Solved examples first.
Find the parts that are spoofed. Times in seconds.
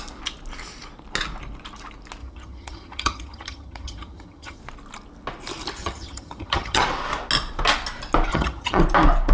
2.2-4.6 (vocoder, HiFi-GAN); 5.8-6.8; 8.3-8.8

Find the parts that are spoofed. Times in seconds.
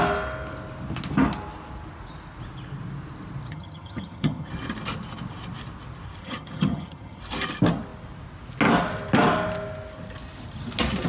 3.5-4.5 (vocoder, HiFi-GAN); 6.2-7.2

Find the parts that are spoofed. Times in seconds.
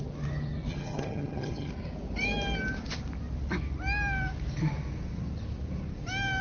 0.7-1.7 (vocoder, HiFi-GAN)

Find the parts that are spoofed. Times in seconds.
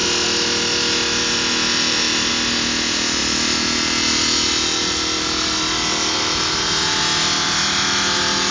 none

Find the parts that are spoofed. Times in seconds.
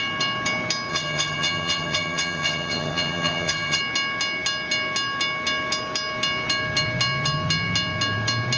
0.9-3.8 (vocoder, HiFi-GAN)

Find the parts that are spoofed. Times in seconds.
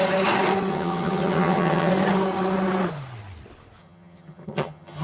0.7-1.9 (vocoder, HiFi-GAN); 3.8-5.0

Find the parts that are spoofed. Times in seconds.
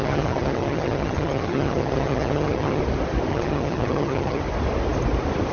0.0-2.8 (vocoder, HiFi-GAN); 3.3-4.4